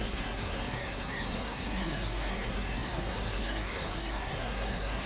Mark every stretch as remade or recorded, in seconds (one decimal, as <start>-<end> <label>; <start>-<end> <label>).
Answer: 0.0-5.1 remade